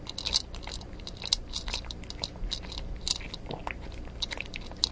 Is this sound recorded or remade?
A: recorded